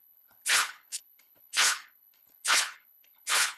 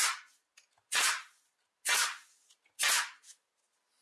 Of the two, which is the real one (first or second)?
second